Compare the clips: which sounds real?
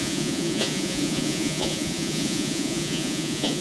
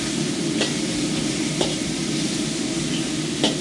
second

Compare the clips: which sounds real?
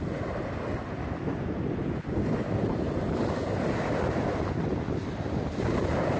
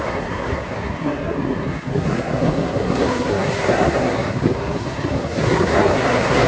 first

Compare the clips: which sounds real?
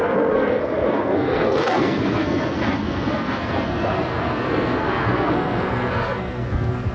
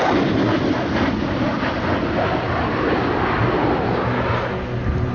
second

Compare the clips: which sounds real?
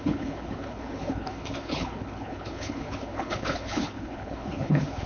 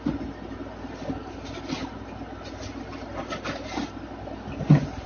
second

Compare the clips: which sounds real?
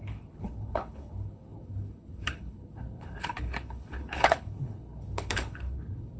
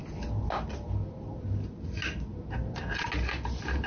second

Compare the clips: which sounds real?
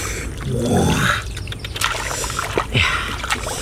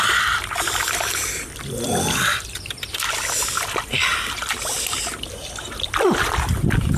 first